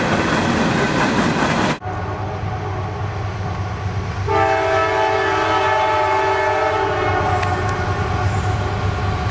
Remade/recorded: recorded